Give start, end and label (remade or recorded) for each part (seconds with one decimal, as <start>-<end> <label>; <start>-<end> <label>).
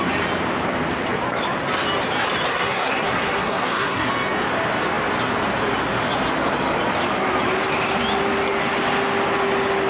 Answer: 0.0-2.5 recorded; 2.5-4.1 remade; 4.1-9.9 recorded